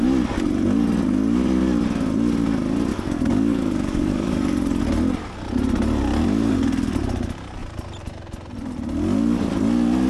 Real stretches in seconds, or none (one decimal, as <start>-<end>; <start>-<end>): 0.0-2.9; 4.8-10.1